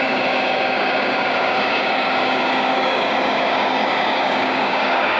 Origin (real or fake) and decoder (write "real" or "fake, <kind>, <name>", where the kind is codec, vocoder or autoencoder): fake, codec, DAC